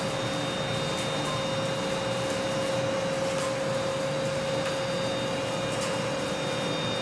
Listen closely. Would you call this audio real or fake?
real